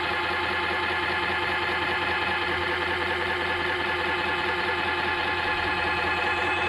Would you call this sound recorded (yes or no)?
yes